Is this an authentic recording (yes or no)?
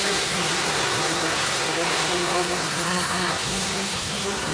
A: no